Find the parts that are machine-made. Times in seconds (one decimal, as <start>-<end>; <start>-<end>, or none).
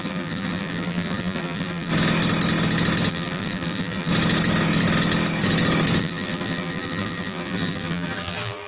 0.0-1.9; 3.1-4.1; 6.0-8.7